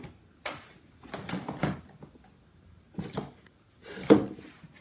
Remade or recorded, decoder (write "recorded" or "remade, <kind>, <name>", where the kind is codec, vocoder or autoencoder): recorded